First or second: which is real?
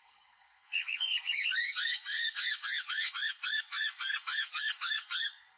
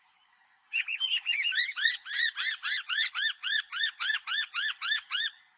second